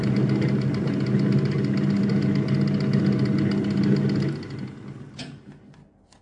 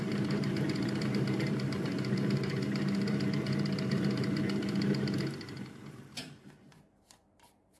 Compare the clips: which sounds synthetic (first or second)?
second